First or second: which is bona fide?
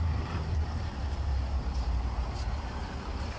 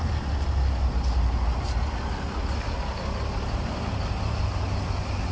second